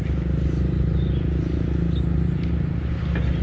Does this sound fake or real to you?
real